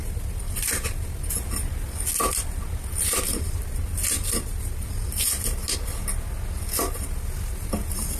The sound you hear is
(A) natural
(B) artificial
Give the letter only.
A